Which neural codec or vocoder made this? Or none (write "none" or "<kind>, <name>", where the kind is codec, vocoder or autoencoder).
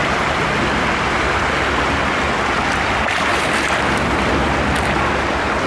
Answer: none